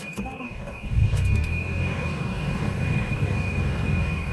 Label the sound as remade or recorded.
remade